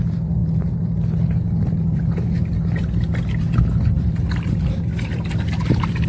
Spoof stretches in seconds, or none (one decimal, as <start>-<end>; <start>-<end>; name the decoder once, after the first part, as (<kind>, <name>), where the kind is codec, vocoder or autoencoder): none